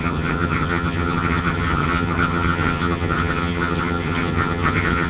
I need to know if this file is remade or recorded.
remade